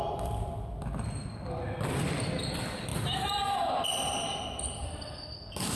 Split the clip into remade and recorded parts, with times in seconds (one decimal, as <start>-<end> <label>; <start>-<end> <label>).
0.0-5.8 recorded